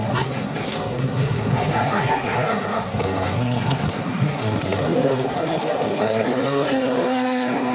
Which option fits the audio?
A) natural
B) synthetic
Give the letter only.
B